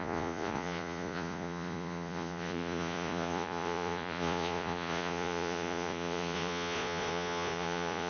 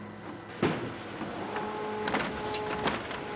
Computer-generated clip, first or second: first